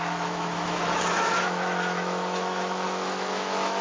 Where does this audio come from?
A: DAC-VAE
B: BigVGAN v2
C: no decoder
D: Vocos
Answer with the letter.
A